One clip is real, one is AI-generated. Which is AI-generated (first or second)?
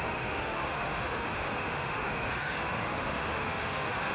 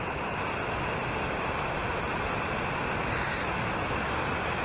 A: first